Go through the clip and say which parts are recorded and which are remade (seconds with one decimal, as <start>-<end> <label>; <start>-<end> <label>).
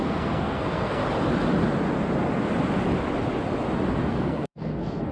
0.0-1.0 remade; 1.0-4.1 recorded; 4.1-5.1 remade